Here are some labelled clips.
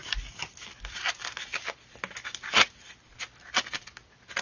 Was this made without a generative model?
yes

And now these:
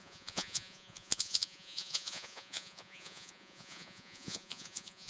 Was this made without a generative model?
no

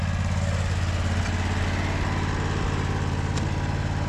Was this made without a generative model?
yes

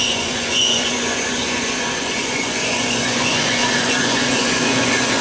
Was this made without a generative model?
no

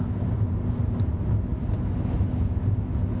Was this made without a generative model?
yes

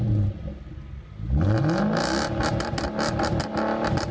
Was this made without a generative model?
yes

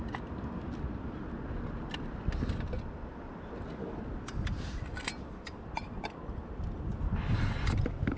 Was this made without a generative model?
yes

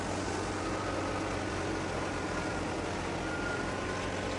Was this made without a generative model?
yes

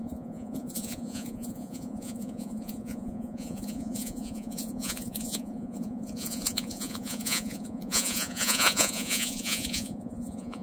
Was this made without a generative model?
no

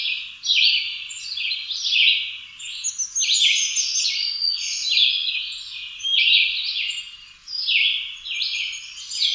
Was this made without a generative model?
yes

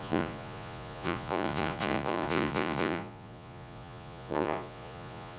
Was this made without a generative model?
no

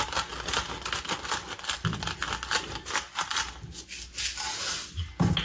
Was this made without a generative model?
yes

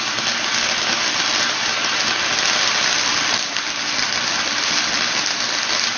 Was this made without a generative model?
yes